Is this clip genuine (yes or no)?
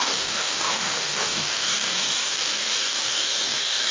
no